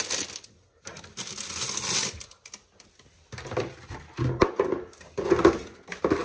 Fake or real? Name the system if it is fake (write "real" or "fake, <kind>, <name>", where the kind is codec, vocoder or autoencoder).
real